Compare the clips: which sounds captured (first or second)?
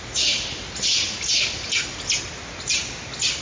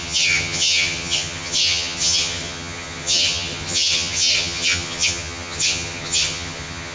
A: first